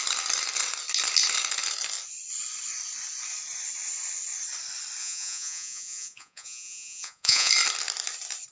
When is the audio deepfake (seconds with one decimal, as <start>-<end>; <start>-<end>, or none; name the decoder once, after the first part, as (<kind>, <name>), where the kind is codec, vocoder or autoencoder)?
5.0-7.5 (vocoder, Vocos)